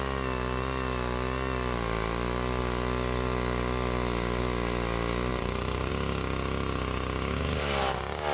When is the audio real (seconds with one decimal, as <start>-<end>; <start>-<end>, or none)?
0.0-5.3; 5.9-8.3

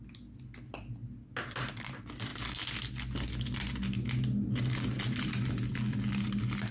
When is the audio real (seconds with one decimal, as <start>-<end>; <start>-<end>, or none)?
0.0-6.7

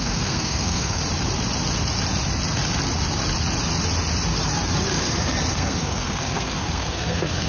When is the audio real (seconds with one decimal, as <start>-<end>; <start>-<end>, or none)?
1.0-5.5

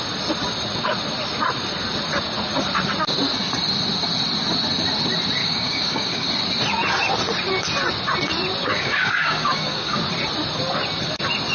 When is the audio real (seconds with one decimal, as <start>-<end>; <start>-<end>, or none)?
0.0-5.4; 6.3-8.7; 10.0-11.5

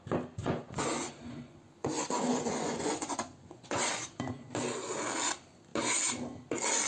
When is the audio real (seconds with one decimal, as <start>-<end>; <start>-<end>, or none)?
0.0-0.4; 4.5-6.9

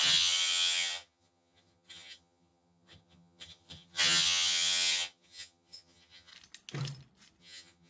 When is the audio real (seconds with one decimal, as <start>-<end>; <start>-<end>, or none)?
6.3-7.4